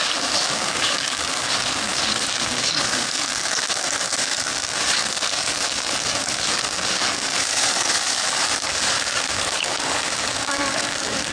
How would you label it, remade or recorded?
remade